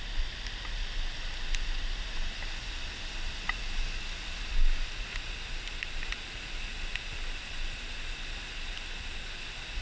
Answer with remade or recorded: recorded